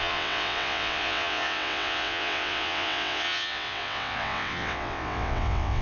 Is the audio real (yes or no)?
no